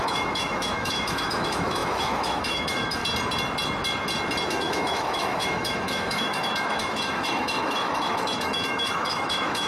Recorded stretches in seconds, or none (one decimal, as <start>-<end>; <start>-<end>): 3.0-4.5